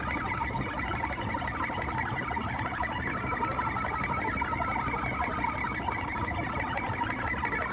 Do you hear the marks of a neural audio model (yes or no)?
no